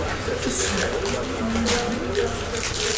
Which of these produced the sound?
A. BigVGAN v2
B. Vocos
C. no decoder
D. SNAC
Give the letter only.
C